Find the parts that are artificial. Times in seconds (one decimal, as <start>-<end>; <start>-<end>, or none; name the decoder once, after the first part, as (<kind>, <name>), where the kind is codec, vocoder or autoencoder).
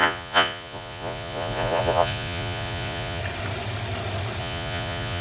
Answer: 0.0-3.2 (vocoder, Vocos); 4.4-5.2